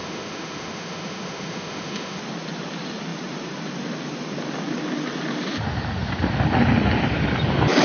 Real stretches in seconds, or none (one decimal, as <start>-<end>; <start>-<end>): 2.2-7.8